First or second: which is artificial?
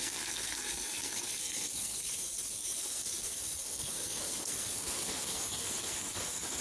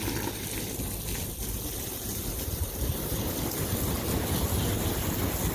first